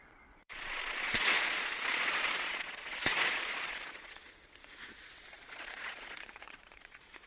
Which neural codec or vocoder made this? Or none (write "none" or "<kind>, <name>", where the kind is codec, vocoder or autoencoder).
vocoder, Vocos